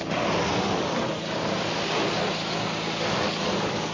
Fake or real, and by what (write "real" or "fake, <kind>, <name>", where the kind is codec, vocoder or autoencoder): real